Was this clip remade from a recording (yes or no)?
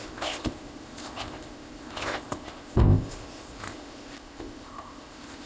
yes